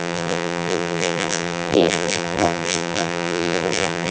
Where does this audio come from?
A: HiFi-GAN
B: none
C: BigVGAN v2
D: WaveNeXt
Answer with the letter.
C